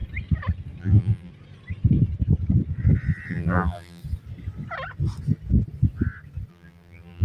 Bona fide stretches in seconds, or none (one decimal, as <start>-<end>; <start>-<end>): 0.0-0.8; 1.3-3.3; 4.0-6.5